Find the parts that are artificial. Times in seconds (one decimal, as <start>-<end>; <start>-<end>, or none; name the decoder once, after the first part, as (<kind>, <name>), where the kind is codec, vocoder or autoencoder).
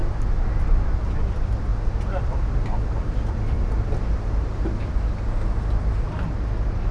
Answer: none